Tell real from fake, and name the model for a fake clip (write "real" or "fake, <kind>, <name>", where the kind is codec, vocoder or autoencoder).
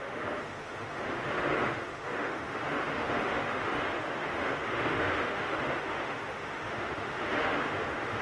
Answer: fake, autoencoder, DAC-VAE